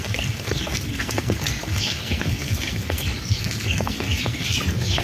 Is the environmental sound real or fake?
fake